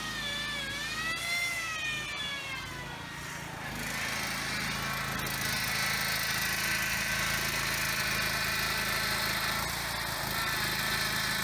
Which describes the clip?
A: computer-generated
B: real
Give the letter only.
B